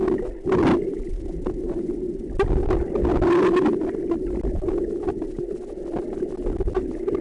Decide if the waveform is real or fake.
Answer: real